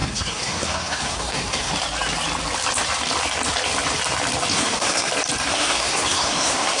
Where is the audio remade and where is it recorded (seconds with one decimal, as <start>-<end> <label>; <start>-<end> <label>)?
0.0-1.7 remade; 1.7-4.5 recorded; 4.5-5.1 remade; 5.1-5.5 recorded; 5.5-6.8 remade